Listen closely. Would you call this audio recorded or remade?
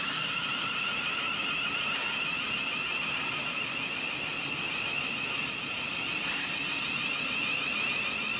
recorded